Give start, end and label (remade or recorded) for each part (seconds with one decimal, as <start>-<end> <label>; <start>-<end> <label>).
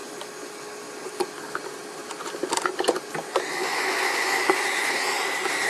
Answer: 0.0-3.6 recorded; 3.6-4.9 remade; 4.9-5.7 recorded